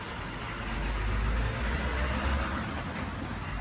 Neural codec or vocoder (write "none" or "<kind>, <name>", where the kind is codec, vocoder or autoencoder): none